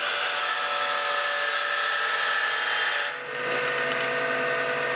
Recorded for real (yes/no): yes